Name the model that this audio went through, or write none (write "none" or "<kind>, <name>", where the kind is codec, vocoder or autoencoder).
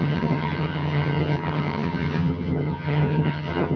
vocoder, HiFi-GAN